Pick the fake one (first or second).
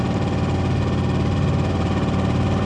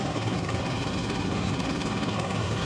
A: second